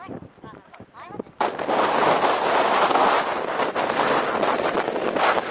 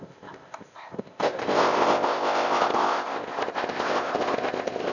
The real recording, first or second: first